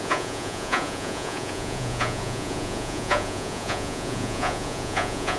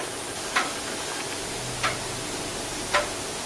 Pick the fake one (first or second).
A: first